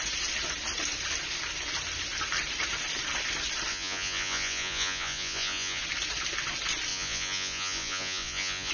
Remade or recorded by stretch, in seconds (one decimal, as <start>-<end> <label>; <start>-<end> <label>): 0.0-3.7 recorded; 3.7-5.8 remade; 5.8-6.9 recorded; 6.9-8.7 remade